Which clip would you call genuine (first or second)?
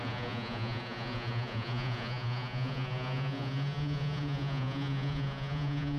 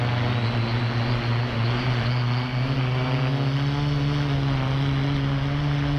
second